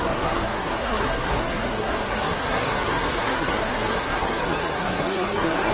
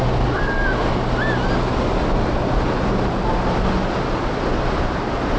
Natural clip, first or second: second